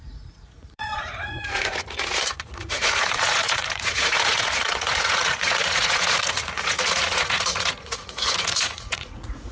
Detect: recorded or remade remade